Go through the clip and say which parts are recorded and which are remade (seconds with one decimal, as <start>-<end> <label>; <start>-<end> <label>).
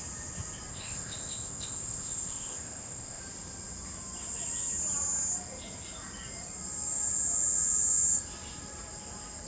0.0-0.7 recorded; 0.7-3.2 remade; 3.2-9.5 recorded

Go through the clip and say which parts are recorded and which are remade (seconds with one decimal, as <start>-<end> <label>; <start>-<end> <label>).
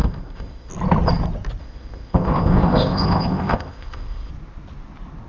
0.0-0.7 remade; 0.7-1.6 recorded; 1.6-4.3 remade; 4.3-5.3 recorded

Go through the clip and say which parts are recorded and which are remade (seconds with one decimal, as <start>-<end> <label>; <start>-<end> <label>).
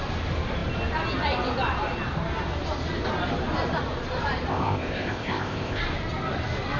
0.0-4.5 recorded; 4.5-5.8 remade; 5.8-6.8 recorded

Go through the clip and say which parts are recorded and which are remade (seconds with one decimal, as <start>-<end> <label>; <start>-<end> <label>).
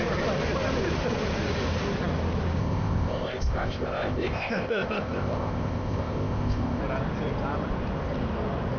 0.0-2.6 recorded; 2.6-6.8 remade; 6.8-8.8 recorded